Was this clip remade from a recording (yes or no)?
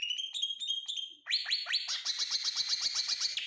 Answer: no